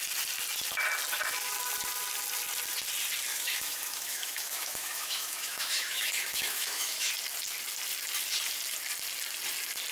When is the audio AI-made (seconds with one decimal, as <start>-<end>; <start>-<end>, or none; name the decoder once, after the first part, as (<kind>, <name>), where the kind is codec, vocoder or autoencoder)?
3.3-7.1 (autoencoder, DAC-VAE)